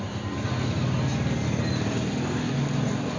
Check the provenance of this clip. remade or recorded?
recorded